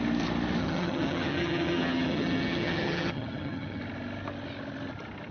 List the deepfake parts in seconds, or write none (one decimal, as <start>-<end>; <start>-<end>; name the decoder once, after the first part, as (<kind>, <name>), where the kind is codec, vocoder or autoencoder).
0.6-3.8 (vocoder, HiFi-GAN)